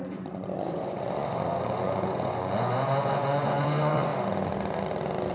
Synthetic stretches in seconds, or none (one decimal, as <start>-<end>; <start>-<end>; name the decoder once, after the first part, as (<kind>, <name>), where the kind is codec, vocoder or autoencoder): 0.0-4.1 (vocoder, Vocos)